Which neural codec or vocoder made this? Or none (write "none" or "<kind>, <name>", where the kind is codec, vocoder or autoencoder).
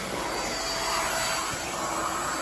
none